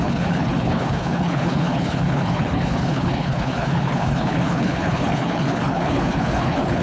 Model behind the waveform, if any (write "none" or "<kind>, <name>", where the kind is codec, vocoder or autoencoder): codec, HILCodec